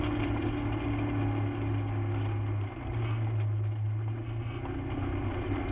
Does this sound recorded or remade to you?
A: recorded